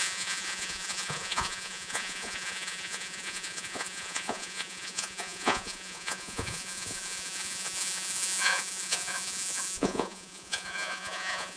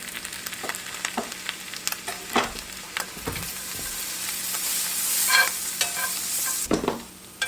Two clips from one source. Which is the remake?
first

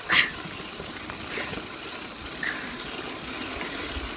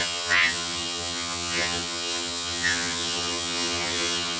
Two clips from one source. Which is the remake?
second